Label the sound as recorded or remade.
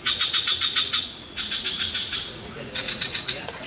remade